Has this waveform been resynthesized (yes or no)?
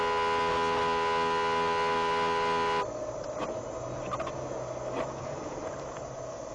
no